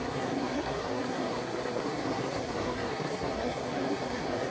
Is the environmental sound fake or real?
fake